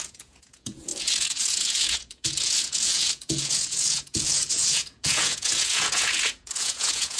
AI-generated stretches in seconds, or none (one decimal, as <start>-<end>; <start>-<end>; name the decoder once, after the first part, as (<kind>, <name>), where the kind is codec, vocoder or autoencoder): 0.0-7.2 (vocoder, Vocos)